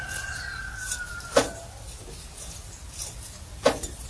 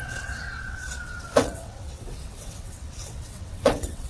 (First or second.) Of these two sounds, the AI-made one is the second